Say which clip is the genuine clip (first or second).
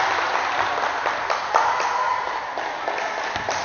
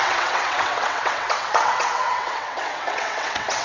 first